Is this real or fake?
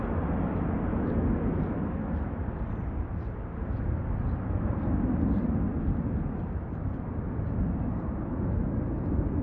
real